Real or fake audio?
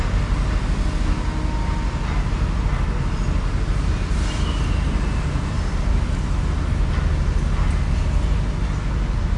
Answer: real